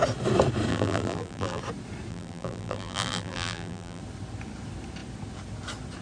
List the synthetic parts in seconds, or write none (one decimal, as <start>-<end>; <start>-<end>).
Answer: 0.7-1.6; 2.1-4.0